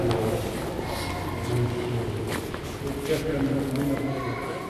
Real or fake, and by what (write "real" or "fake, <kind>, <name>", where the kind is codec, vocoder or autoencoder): real